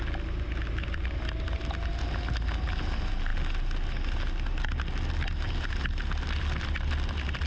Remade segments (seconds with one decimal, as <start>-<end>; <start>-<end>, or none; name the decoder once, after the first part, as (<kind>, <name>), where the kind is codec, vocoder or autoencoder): none